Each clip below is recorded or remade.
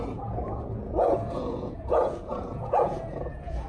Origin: remade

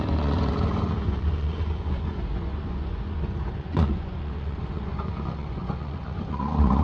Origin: remade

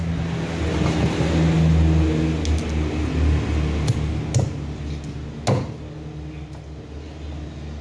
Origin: recorded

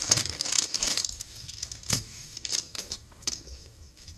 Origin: remade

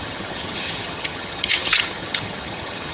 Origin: remade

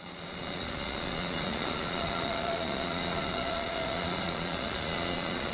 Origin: remade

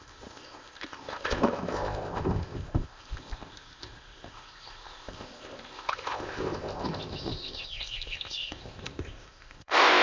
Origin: remade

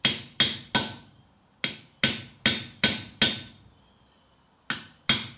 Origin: recorded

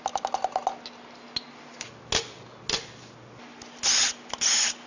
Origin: recorded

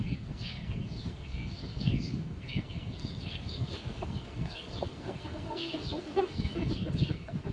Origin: remade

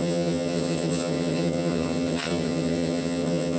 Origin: remade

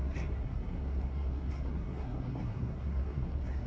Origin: remade